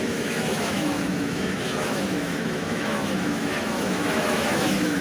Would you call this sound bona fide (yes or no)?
no